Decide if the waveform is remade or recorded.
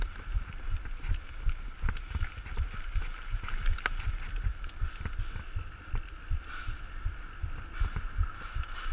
recorded